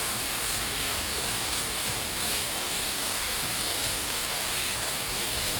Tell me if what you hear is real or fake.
fake